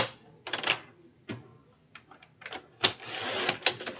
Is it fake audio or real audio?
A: real